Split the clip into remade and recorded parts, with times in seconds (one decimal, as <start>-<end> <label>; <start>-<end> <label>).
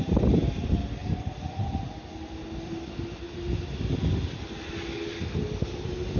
0.0-6.2 recorded